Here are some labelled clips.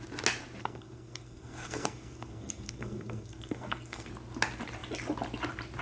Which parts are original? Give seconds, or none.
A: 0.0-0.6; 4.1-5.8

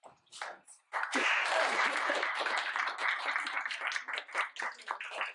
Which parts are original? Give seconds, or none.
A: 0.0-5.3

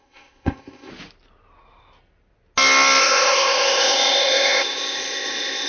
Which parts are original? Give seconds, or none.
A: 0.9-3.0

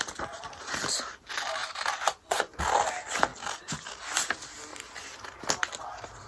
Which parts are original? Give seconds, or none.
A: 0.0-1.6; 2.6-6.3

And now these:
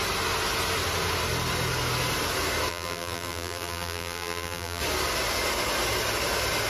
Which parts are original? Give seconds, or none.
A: 0.0-2.7; 4.8-6.7

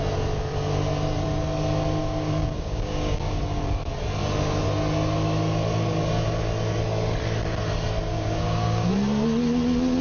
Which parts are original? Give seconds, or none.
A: 0.0-2.0; 3.4-8.1; 8.9-10.0